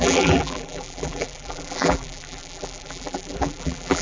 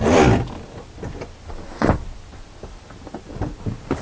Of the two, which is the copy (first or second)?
first